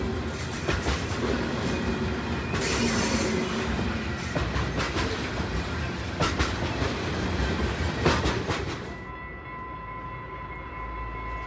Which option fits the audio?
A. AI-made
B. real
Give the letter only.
B